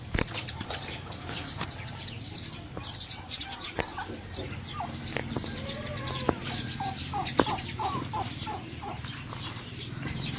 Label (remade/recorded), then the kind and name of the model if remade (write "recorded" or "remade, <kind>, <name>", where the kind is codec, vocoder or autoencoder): remade, vocoder, BigVGAN v2